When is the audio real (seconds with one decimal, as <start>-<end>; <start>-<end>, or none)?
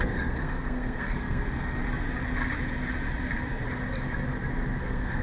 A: 1.8-4.8